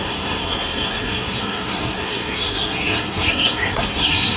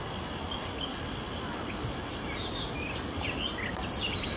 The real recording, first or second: second